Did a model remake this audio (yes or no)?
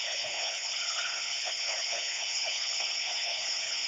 yes